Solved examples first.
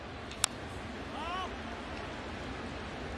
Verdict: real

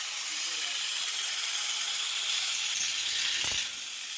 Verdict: real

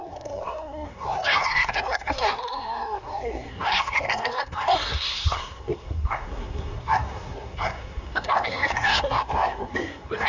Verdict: fake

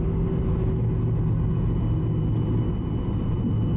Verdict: real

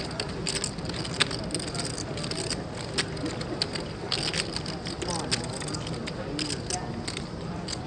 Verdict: real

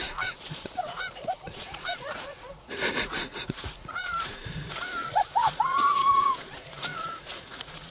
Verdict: fake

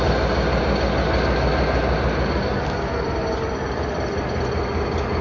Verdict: real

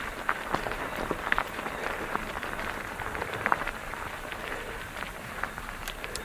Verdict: fake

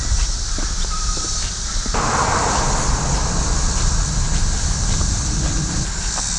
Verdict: real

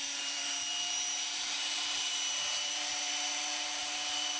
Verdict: fake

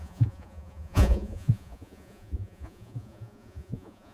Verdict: fake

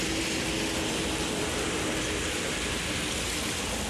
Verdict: real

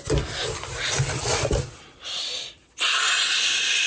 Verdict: real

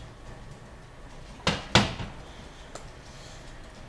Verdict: real